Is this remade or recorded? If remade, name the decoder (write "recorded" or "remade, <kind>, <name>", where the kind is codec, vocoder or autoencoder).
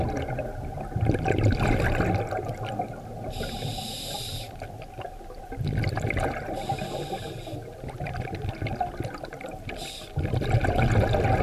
recorded